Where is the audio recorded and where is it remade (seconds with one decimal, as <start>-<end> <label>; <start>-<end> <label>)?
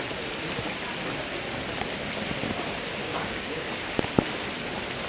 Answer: 0.0-3.0 recorded; 3.0-3.8 remade; 3.8-5.1 recorded